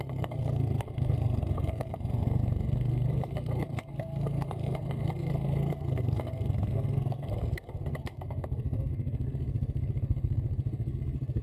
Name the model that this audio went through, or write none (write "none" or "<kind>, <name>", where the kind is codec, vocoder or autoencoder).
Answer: codec, SNAC